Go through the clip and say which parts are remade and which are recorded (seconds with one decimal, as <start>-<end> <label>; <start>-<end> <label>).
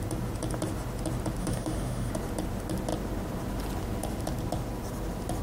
0.0-1.4 recorded; 1.4-2.1 remade; 2.1-5.4 recorded